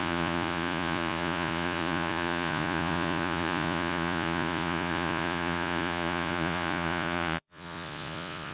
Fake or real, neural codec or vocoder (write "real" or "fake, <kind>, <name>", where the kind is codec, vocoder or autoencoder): fake, vocoder, Vocos